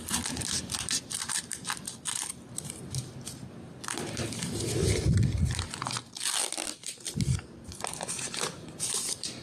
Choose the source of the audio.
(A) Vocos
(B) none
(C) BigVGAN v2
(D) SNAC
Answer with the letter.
C